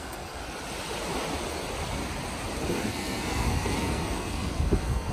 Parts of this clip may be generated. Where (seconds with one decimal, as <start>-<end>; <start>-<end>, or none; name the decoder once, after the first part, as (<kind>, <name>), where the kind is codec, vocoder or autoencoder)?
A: 0.0-0.4 (codec, SNAC); 2.7-5.1